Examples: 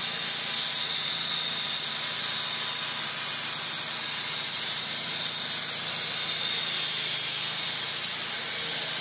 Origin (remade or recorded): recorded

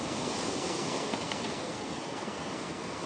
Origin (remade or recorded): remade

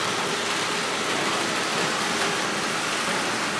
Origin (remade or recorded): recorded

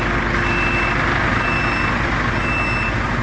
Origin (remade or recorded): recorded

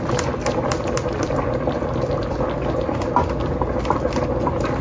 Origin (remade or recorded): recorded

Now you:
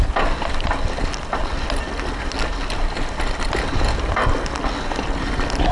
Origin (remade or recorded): recorded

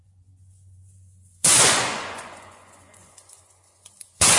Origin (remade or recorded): remade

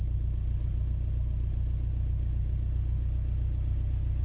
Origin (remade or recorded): recorded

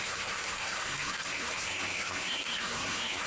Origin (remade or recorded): remade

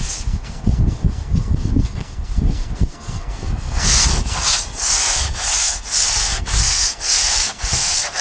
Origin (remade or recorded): remade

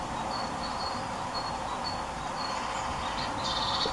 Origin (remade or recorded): recorded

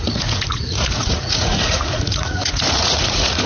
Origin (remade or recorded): remade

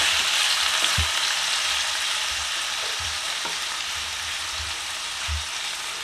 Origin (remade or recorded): recorded